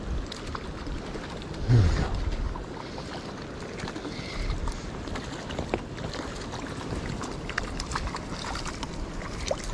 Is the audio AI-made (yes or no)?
no